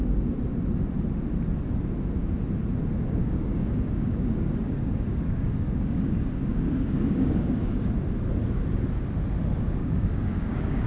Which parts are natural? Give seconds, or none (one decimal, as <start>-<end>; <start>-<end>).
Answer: 0.0-3.2; 7.9-9.8